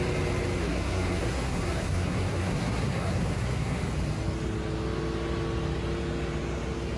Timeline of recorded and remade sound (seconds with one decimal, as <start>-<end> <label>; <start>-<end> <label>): 0.0-0.6 recorded; 0.6-3.9 remade; 3.9-7.0 recorded